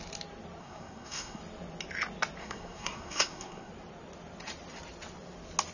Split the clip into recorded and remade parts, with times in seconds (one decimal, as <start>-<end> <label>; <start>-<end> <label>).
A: 0.0-0.6 recorded; 0.6-1.4 remade; 1.4-2.4 recorded; 2.4-3.7 remade; 3.7-5.7 recorded